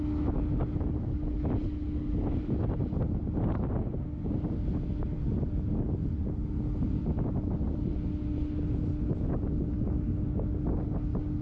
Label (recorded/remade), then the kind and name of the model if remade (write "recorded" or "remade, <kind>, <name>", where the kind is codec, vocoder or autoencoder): recorded